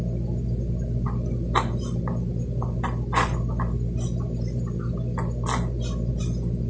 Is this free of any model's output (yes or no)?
yes